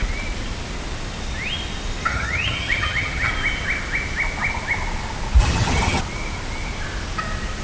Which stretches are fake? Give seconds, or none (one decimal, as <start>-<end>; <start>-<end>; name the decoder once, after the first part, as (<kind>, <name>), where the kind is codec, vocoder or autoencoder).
2.1-3.3 (vocoder, HiFi-GAN); 5.4-6.0